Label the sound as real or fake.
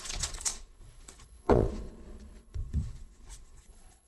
fake